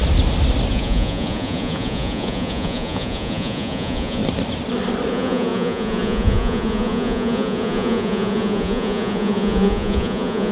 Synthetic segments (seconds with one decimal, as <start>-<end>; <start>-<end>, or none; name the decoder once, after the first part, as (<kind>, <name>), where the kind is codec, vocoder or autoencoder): 0.7-4.2 (vocoder, Vocos); 5.1-10.5